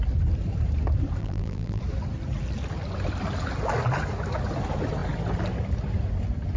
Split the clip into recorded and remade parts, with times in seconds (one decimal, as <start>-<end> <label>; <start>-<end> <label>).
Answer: 0.0-1.2 recorded; 1.2-1.8 remade; 1.8-6.6 recorded